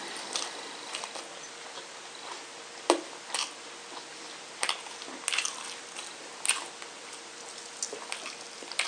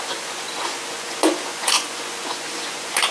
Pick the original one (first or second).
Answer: first